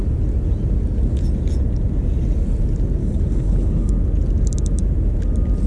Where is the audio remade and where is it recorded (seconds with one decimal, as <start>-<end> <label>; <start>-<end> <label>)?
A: 0.0-3.0 recorded; 3.0-3.9 remade; 3.9-5.7 recorded